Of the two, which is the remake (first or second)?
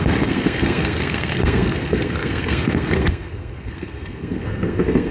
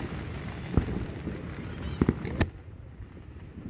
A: first